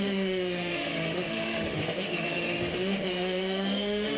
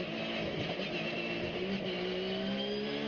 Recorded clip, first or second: second